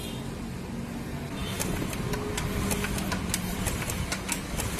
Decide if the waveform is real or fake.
real